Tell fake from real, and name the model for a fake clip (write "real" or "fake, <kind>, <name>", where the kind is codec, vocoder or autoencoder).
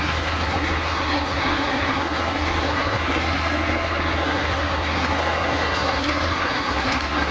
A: fake, codec, SNAC